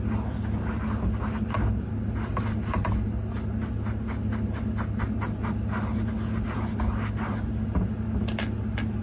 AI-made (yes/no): no